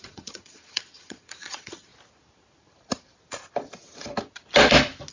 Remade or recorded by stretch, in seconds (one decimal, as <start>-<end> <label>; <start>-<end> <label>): 0.0-1.9 remade; 1.9-5.1 recorded